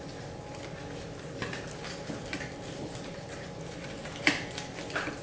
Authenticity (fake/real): real